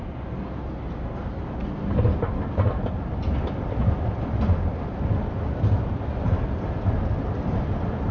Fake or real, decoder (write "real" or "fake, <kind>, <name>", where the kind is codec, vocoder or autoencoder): real